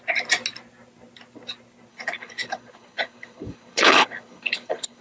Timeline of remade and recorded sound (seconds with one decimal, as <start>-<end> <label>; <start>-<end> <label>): 0.0-1.9 recorded; 1.9-5.0 remade